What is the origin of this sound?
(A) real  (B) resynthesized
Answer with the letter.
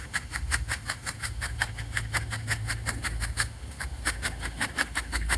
B